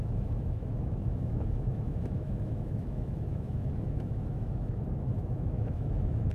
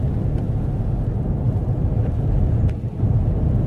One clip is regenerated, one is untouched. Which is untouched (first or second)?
second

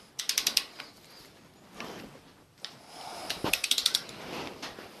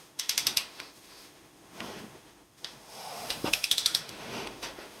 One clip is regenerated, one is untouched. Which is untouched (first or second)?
first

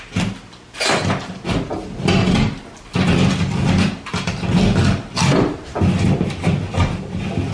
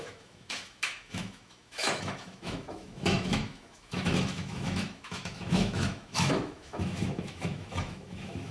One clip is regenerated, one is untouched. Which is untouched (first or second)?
first